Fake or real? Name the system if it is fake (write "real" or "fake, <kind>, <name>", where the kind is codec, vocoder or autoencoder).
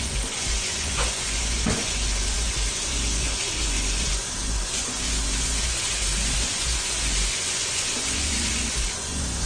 fake, vocoder, Vocos